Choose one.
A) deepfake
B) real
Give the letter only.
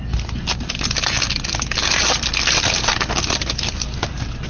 B